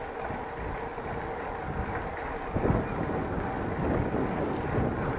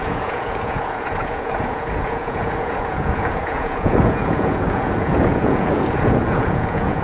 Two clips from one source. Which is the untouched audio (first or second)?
first